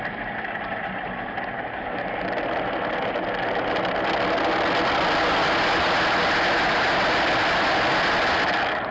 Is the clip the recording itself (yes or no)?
yes